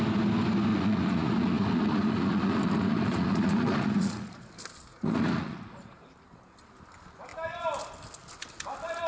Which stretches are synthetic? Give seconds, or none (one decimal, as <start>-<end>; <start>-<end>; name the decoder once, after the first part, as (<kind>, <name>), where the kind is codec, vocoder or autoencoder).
0.7-4.5 (vocoder, Vocos); 4.9-6.0